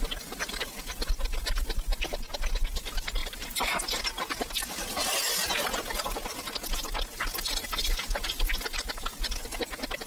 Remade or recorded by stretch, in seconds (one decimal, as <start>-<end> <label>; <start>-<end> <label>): 0.0-3.2 recorded; 3.2-4.0 remade; 4.0-10.1 recorded